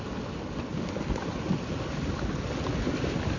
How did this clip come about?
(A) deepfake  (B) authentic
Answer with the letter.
B